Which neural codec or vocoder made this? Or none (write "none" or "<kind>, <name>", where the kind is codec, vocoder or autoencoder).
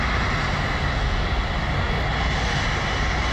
none